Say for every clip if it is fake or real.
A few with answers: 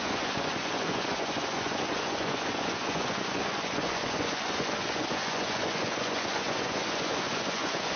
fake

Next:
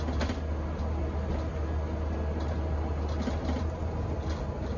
real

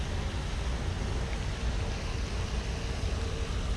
real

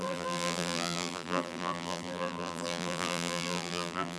fake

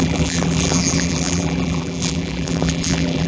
fake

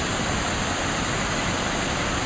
real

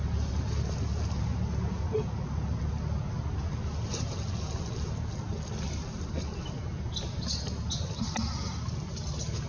real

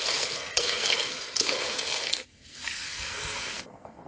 fake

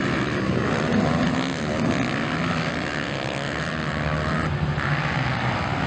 real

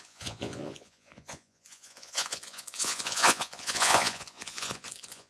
fake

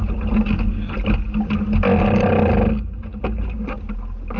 real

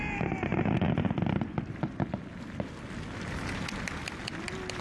real